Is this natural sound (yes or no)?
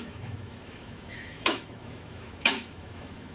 no